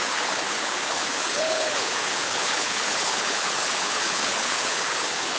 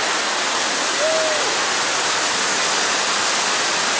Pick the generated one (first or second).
first